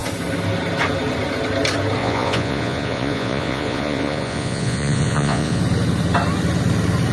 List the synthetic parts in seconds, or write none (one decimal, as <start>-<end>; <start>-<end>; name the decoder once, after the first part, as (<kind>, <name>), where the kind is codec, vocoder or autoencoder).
2.0-5.6 (vocoder, Vocos)